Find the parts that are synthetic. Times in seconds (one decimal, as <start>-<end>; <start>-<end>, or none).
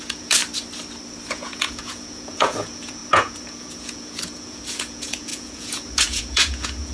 0.0-0.4; 1.3-6.9